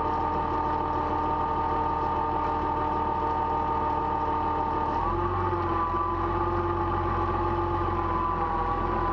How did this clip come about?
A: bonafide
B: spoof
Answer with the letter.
A